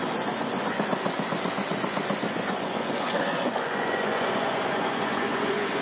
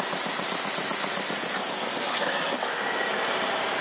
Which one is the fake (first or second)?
first